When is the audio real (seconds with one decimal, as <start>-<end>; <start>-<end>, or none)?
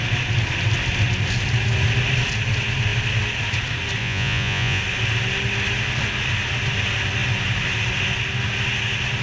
0.0-4.0; 4.8-9.2